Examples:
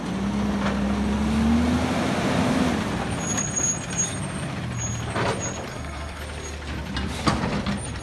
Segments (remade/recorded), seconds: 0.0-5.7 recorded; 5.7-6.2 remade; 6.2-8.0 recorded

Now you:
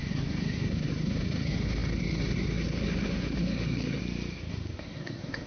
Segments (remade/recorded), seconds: 0.0-4.0 remade; 4.0-4.5 recorded; 4.5-5.5 remade

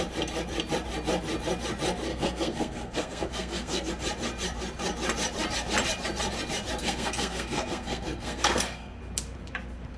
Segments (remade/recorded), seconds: 0.0-2.1 recorded; 2.1-3.9 remade; 3.9-6.8 recorded; 6.8-9.0 remade; 9.0-10.0 recorded

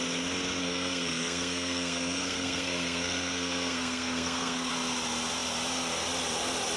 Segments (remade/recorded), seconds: 0.0-0.6 recorded; 0.6-4.7 remade; 4.7-6.8 recorded

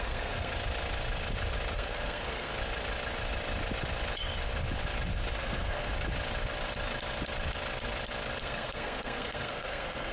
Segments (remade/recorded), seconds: 0.0-0.5 remade; 0.5-1.7 recorded; 1.7-2.5 remade; 2.5-5.4 recorded; 5.4-5.9 remade; 5.9-8.4 recorded; 8.4-10.1 remade

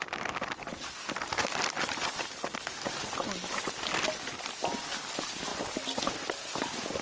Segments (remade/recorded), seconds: 0.0-7.0 recorded

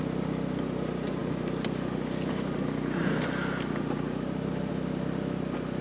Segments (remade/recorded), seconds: 0.0-5.8 recorded